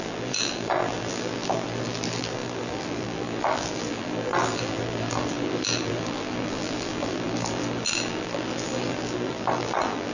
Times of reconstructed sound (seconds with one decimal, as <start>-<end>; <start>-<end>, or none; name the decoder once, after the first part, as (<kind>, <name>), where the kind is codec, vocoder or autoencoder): 0.0-10.1 (vocoder, BigVGAN v2)